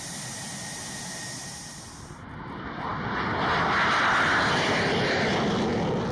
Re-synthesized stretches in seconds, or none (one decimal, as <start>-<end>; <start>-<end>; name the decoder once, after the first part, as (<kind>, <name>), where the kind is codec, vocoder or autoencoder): none